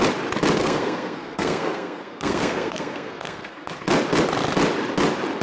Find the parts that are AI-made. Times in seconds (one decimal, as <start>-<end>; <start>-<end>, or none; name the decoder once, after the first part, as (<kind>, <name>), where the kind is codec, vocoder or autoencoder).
0.6-3.7 (codec, SNAC)